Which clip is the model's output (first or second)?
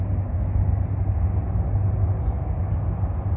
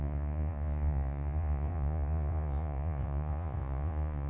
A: second